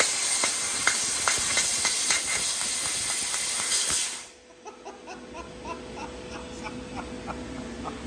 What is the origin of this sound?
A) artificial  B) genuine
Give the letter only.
B